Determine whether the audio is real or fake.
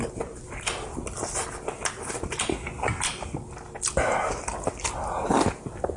real